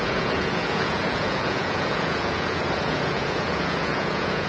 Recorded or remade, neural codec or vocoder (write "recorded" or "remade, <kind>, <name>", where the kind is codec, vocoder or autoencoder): remade, vocoder, Vocos